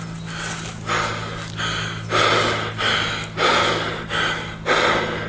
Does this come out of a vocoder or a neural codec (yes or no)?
no